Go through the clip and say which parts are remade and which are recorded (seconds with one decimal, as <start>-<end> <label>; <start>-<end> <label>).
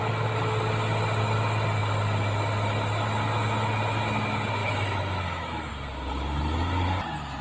0.0-4.6 recorded; 4.6-5.7 remade; 5.7-7.4 recorded